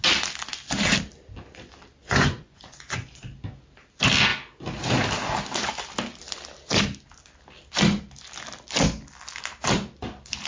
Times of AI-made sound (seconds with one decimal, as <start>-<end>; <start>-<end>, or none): 2.0-3.2